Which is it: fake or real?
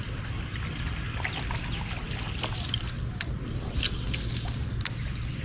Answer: real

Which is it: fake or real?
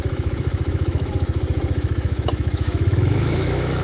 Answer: fake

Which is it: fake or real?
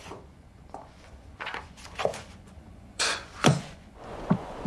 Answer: fake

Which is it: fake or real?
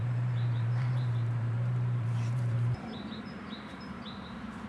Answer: fake